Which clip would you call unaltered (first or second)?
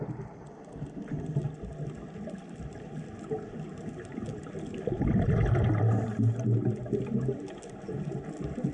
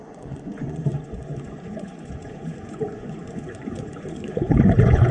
first